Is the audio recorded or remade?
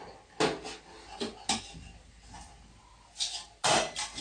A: recorded